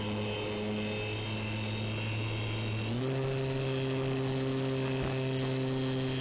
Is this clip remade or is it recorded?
recorded